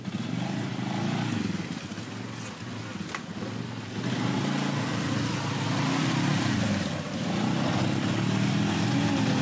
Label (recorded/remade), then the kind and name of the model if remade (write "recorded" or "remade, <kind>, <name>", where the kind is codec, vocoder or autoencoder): recorded